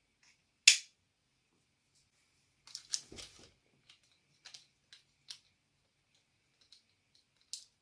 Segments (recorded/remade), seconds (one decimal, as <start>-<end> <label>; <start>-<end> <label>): 0.0-7.8 recorded